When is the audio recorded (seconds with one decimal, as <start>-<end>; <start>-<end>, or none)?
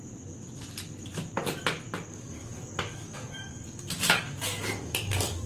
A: 0.0-2.1